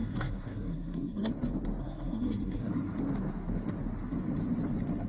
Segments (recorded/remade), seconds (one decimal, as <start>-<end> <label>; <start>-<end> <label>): 0.0-1.3 remade; 1.3-1.8 recorded; 1.8-2.7 remade; 2.7-5.1 recorded

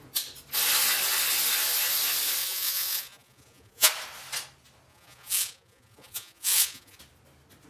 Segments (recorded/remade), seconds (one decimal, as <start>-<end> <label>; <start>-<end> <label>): 0.0-2.4 recorded; 2.4-3.9 remade; 3.9-4.9 recorded; 4.9-7.0 remade; 7.0-7.7 recorded

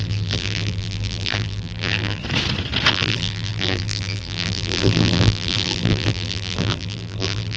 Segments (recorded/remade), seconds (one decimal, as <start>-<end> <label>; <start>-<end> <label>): 0.0-2.2 remade; 2.2-2.9 recorded; 2.9-7.6 remade

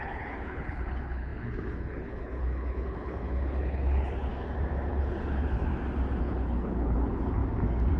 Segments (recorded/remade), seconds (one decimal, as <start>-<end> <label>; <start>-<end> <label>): 0.0-4.3 remade; 4.3-4.9 recorded; 4.9-5.7 remade; 5.7-6.2 recorded; 6.2-7.4 remade; 7.4-8.0 recorded

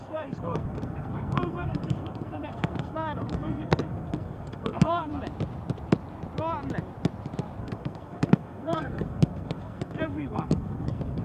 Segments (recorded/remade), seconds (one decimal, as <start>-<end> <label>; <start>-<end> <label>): 0.0-5.1 remade; 5.1-7.6 recorded; 7.6-11.2 remade

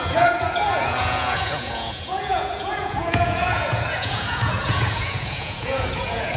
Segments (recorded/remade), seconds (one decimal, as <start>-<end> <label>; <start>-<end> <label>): 0.0-6.4 remade